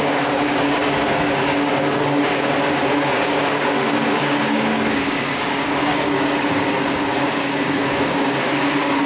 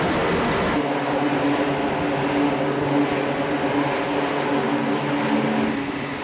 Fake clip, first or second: first